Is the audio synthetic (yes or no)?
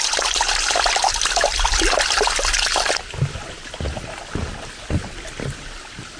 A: no